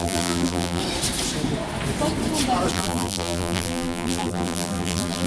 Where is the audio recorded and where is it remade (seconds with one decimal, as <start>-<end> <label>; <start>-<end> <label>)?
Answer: 0.0-0.8 remade; 0.8-2.7 recorded; 2.7-5.3 remade